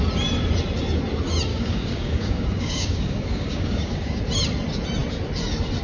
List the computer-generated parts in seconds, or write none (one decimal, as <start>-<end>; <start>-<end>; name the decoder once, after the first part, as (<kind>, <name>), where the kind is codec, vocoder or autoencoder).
1.5-4.2 (codec, DAC)